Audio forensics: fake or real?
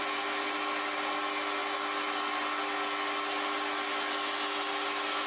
real